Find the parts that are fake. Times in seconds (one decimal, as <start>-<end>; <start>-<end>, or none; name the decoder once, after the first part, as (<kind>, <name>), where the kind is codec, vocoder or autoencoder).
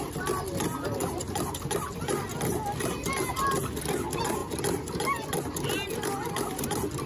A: none